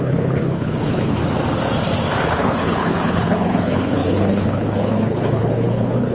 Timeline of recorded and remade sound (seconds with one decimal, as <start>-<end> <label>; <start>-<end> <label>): 0.0-1.2 remade; 1.2-2.2 recorded; 2.2-6.1 remade